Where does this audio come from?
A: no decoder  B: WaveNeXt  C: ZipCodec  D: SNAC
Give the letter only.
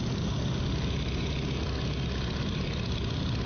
A